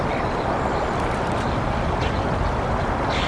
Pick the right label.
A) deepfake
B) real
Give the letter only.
B